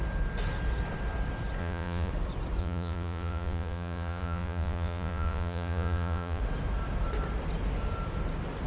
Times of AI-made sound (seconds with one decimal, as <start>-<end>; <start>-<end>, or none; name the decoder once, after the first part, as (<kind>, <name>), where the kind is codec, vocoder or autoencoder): 1.6-2.1 (vocoder, Vocos); 2.6-6.4